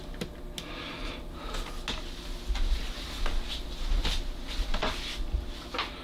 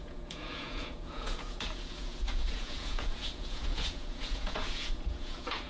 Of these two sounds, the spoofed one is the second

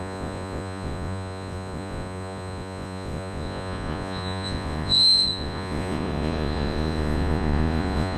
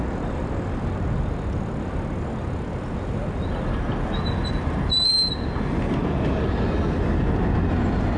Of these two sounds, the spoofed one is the first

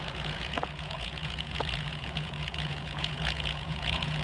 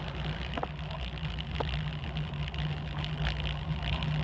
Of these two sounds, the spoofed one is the first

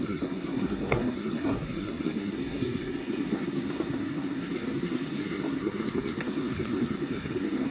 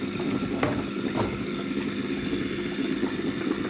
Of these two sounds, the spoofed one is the first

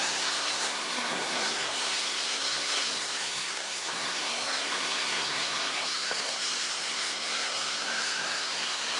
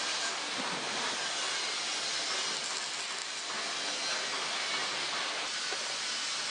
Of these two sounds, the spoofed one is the first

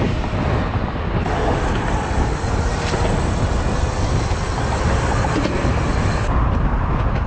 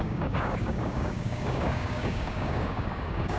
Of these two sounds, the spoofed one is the second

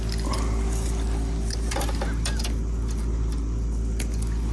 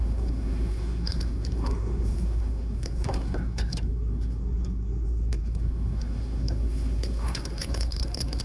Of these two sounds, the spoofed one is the second